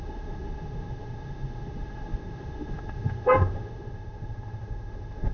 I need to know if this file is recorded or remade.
remade